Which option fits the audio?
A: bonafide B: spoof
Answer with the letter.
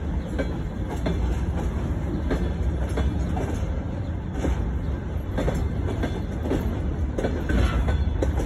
A